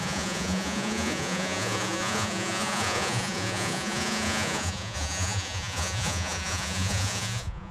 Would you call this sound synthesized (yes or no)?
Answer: yes